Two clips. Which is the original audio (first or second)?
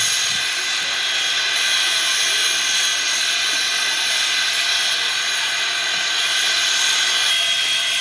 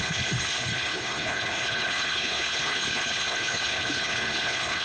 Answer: first